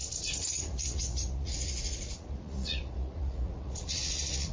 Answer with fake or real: fake